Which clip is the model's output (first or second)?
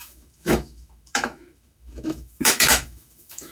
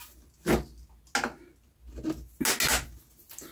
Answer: first